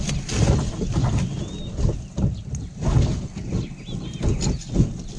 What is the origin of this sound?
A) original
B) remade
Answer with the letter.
A